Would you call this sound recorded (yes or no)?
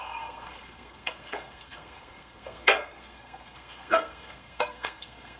no